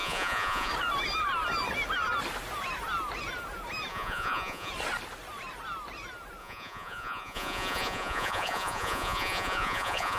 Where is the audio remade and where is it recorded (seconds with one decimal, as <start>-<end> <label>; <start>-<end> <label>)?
0.0-0.7 remade; 0.7-3.9 recorded; 3.9-4.7 remade; 4.7-6.4 recorded; 6.4-10.2 remade